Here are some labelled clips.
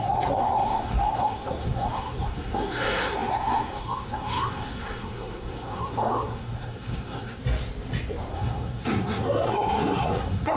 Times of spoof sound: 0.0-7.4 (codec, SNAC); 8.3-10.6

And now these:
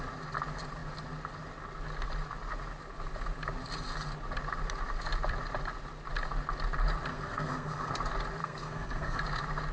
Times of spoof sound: 7.1-7.9 (codec, SNAC); 8.4-9.2

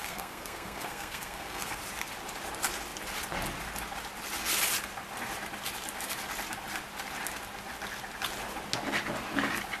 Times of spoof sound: 0.0-1.8 (codec, SNAC)

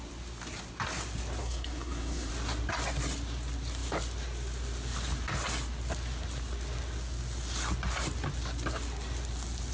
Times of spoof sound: 1.4-2.3 (codec, SNAC)